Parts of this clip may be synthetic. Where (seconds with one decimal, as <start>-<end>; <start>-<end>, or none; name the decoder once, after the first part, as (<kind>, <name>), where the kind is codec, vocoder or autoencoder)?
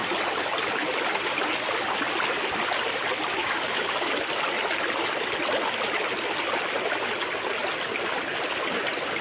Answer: 3.4-4.1 (codec, DAC)